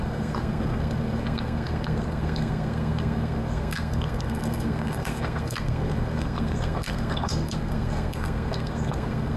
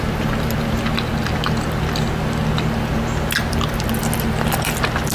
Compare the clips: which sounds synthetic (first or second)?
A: first